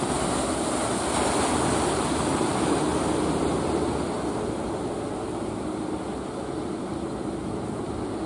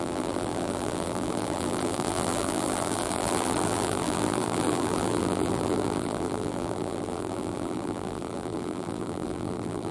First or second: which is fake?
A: second